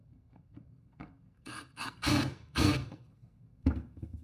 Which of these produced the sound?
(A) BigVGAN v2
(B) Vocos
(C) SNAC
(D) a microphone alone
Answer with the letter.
C